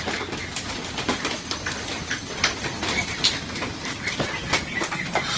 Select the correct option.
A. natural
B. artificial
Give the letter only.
A